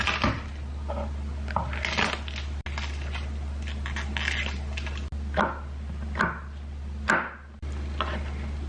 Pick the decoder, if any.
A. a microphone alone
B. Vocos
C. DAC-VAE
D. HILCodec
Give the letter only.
A